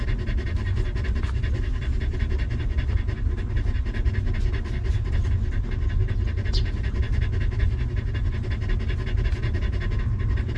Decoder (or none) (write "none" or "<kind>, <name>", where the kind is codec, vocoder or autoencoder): none